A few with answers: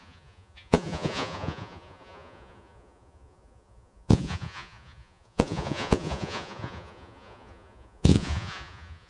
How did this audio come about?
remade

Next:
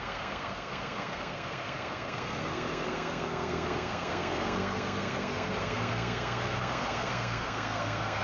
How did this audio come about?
remade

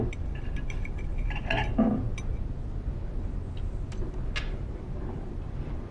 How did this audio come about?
recorded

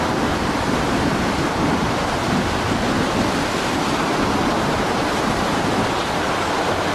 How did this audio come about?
recorded